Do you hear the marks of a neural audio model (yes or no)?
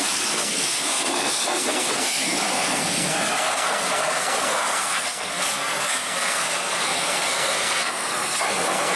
yes